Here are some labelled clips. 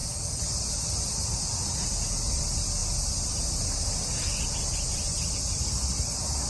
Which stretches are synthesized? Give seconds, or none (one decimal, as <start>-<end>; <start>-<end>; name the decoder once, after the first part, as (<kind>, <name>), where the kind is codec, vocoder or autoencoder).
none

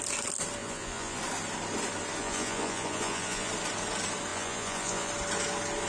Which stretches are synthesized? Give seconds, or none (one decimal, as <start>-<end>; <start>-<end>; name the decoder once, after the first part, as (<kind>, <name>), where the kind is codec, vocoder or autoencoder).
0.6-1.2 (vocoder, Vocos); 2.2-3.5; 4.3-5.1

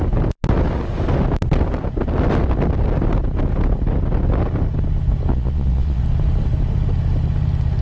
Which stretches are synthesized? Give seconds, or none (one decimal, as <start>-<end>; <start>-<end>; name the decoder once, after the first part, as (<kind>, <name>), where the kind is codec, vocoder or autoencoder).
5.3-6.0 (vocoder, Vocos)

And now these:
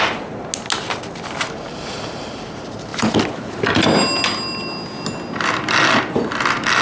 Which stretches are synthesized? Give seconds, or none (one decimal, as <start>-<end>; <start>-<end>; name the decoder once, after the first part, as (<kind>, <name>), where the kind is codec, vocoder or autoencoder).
none